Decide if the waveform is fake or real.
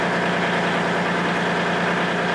real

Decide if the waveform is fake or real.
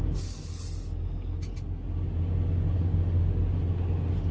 real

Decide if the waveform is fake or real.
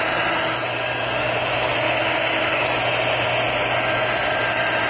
real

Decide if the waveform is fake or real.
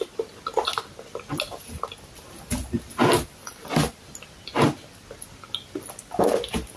real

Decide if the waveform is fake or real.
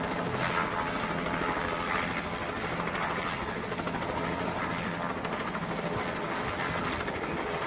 real